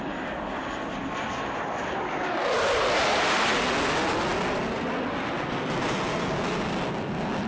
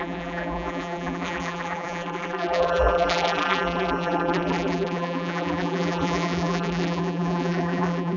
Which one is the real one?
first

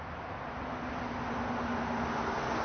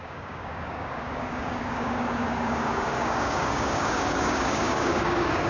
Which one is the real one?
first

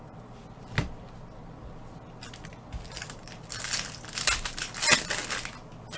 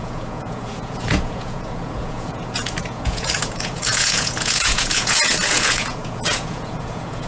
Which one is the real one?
first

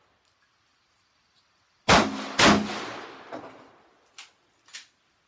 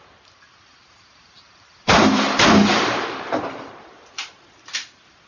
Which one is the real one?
first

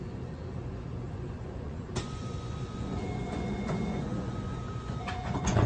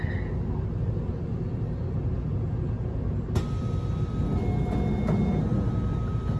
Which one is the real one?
second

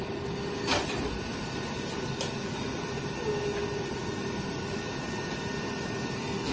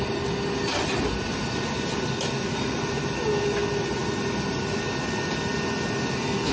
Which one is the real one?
second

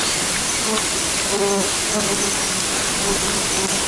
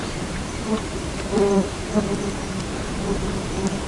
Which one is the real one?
first